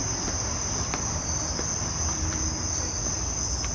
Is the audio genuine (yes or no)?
yes